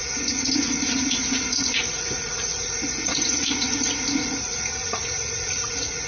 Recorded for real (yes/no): no